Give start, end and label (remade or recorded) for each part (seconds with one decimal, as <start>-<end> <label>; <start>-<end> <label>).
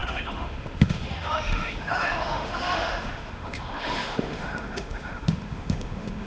0.0-6.3 remade